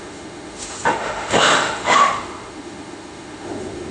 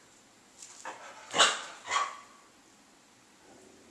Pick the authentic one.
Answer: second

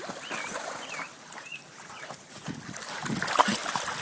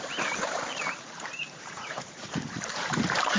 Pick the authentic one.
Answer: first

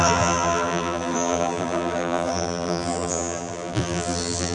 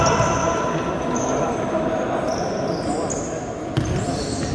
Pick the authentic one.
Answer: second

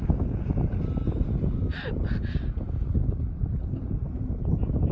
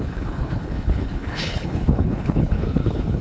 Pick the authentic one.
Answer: first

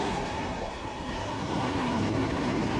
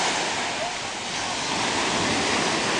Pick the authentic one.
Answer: second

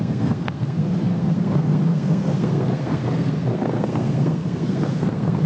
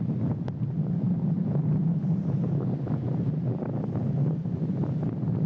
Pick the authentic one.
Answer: second